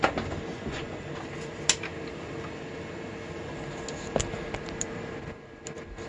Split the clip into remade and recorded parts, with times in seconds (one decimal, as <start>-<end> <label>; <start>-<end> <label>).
0.0-0.5 recorded; 0.5-1.1 remade; 1.1-6.1 recorded